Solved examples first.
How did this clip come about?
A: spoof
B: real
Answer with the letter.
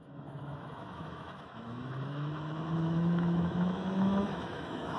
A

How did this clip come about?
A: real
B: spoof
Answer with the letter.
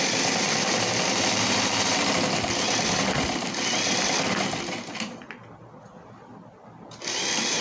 A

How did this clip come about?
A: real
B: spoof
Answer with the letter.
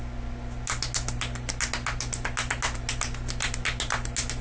A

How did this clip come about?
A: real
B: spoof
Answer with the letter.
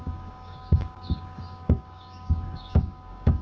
B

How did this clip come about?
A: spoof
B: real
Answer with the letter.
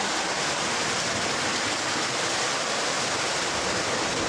B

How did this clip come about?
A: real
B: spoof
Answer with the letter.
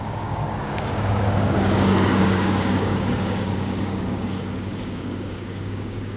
B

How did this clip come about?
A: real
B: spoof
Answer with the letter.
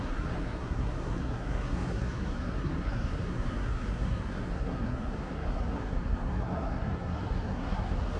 B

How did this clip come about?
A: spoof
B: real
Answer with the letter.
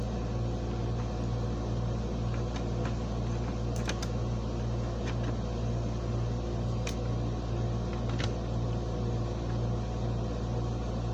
B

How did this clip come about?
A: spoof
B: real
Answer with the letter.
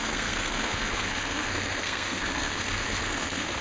A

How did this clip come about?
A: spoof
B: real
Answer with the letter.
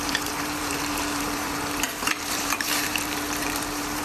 A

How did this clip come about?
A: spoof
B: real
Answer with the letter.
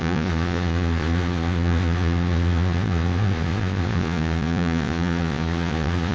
A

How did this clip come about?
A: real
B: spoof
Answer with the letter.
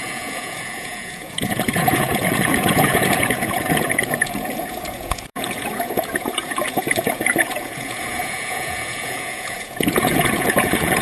B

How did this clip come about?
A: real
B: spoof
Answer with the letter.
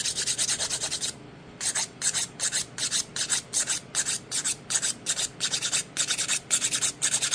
A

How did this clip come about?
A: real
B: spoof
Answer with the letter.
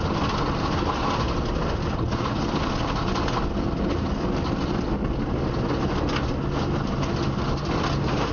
A